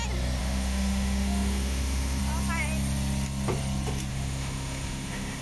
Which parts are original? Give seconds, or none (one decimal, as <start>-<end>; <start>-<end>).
0.0-0.4; 2.2-4.1